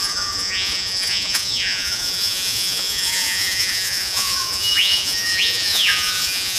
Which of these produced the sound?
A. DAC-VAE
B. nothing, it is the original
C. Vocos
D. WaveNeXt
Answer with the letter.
C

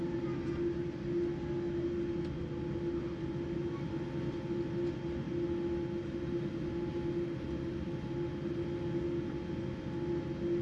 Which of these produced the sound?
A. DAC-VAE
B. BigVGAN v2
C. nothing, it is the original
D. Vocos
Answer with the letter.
C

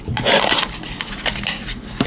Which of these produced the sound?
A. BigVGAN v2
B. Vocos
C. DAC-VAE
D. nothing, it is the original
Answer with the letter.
D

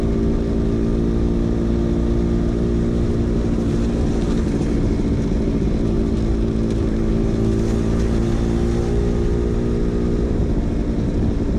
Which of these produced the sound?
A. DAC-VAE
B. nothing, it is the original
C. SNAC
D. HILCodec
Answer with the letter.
B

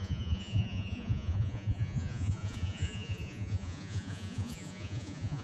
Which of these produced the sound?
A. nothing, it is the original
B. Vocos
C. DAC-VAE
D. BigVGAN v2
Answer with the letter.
B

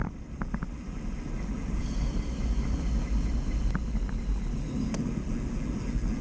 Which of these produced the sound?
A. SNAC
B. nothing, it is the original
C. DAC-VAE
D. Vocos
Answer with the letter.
B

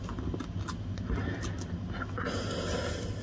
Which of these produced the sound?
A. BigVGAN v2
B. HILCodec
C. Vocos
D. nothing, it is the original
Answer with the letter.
D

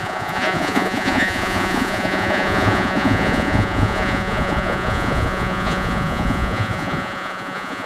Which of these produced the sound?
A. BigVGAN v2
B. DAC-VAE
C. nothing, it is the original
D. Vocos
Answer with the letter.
D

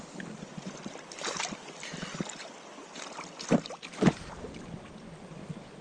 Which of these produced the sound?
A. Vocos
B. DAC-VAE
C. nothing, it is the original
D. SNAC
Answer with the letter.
C